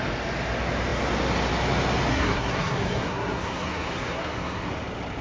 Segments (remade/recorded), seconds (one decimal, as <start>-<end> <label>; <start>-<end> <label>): 0.0-2.1 recorded; 2.1-4.7 remade; 4.7-5.2 recorded